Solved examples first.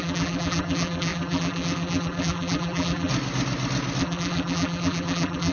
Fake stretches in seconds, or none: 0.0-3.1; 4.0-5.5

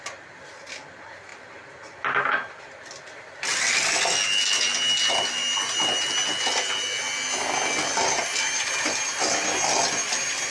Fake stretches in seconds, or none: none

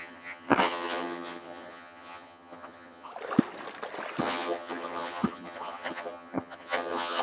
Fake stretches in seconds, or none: 0.0-3.1; 4.2-7.2